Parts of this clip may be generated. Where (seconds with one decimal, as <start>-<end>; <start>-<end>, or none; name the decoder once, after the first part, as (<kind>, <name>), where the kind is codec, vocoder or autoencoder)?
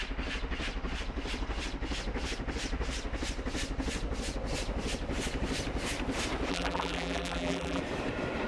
6.5-7.8 (vocoder, BigVGAN v2)